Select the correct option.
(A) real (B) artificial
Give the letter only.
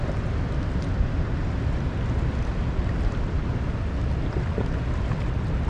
A